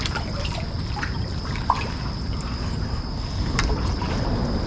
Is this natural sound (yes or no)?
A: yes